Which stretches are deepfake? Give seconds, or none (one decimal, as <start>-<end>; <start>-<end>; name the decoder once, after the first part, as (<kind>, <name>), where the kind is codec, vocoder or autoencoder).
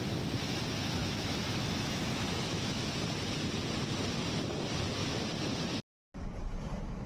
1.0-2.8 (autoencoder, DAC-VAE)